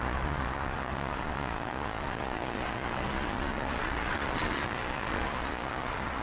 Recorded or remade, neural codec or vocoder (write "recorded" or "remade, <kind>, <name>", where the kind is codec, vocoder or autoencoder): remade, vocoder, Vocos